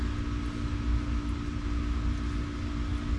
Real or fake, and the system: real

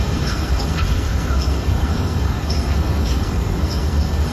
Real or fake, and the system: fake, codec, SNAC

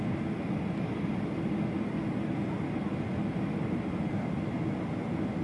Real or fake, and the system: real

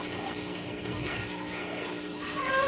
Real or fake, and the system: fake, codec, SNAC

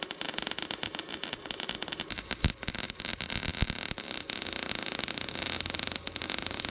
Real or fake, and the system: real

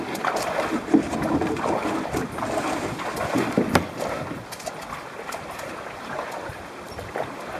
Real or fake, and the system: real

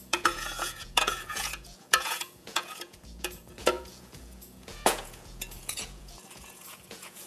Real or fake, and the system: fake, vocoder, Vocos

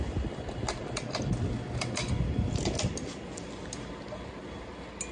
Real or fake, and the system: real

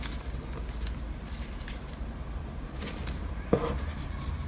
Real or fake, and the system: real